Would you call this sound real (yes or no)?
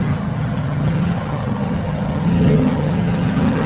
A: no